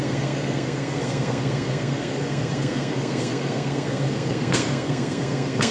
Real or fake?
fake